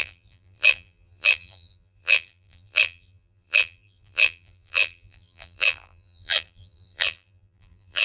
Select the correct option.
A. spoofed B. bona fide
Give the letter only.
A